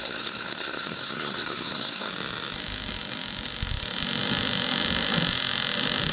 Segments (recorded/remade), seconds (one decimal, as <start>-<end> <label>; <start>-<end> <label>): 0.0-2.1 remade; 2.1-6.1 recorded